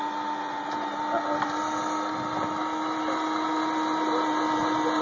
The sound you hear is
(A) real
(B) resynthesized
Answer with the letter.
A